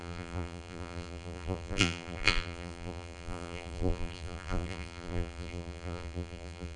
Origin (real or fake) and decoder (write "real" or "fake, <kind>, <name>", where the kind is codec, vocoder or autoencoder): fake, vocoder, BigVGAN v2